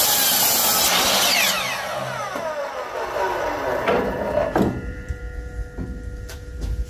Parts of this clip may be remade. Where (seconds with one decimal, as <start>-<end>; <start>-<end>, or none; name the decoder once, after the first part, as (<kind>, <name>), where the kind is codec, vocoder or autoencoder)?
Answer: 2.2-5.2 (vocoder, BigVGAN v2)